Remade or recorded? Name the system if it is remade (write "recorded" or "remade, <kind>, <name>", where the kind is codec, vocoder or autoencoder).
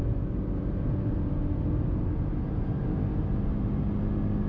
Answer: recorded